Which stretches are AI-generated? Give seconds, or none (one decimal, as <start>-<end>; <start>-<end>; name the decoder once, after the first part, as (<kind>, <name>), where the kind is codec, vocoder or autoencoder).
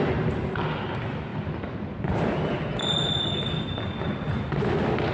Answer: none